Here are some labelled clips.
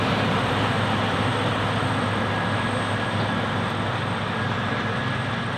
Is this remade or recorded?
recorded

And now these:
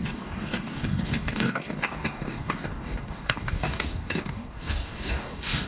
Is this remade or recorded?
remade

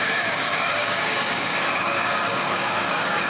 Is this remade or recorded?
remade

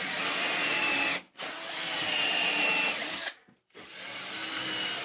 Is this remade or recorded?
recorded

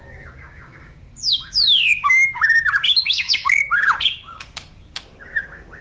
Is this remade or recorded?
remade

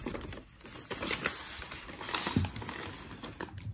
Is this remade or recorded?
recorded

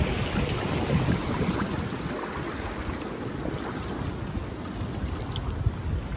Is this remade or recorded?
recorded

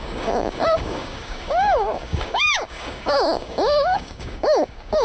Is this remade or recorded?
remade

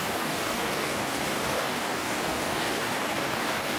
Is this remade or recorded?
remade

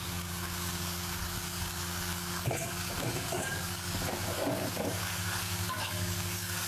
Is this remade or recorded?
remade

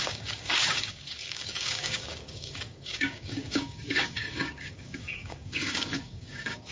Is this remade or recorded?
remade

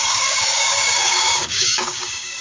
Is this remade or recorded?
remade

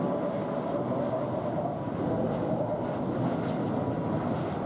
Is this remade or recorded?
recorded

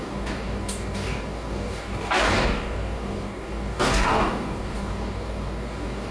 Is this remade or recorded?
remade